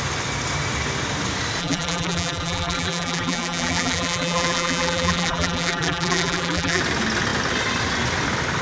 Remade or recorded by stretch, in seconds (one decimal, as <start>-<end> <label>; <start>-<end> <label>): 0.0-1.6 recorded; 1.6-6.8 remade; 6.8-8.6 recorded